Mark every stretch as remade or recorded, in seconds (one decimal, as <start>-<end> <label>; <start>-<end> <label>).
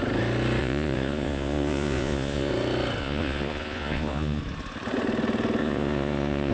0.0-0.6 recorded; 0.6-2.5 remade; 2.5-3.0 recorded; 3.0-4.4 remade; 4.4-5.6 recorded; 5.6-6.5 remade